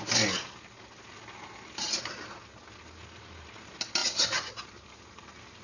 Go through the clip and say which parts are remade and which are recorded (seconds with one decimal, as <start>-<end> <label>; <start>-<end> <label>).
0.0-5.6 recorded